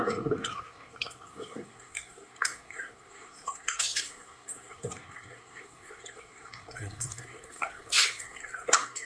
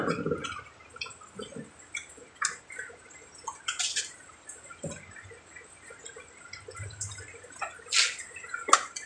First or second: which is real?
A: second